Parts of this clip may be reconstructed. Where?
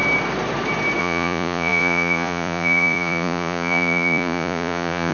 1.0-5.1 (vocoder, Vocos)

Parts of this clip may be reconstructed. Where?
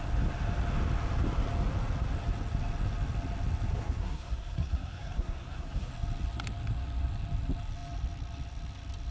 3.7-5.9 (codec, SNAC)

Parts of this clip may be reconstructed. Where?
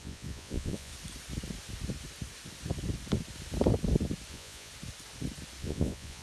0.0-0.9 (vocoder, Vocos); 4.3-4.7; 5.6-6.2